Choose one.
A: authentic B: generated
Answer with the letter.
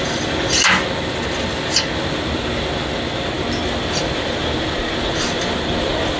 A